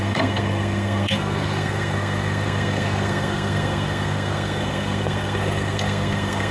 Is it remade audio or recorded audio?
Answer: remade